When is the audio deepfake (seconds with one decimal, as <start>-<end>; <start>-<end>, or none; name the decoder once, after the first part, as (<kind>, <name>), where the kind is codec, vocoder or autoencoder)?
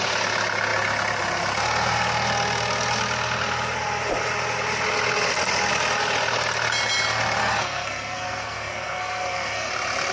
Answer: 7.4-9.7 (codec, SNAC)